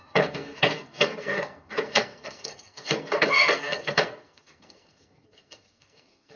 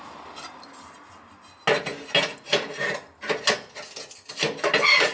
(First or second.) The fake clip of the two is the first